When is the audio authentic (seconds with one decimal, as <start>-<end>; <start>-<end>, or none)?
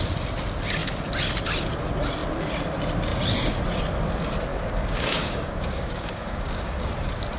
0.0-4.5; 6.9-7.4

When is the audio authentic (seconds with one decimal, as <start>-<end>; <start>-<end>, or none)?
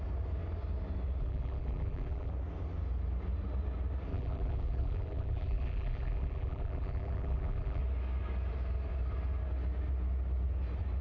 0.0-1.2; 2.3-4.1; 7.8-11.0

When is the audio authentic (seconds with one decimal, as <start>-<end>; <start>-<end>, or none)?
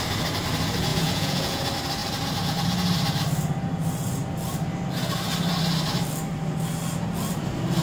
0.0-0.9; 1.6-7.8